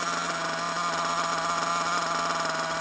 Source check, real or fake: real